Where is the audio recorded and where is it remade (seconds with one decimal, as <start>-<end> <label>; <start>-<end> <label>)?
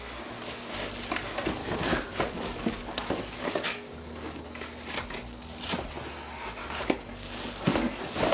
0.0-1.6 recorded; 1.6-4.4 remade; 4.4-6.6 recorded; 6.6-7.9 remade; 7.9-8.3 recorded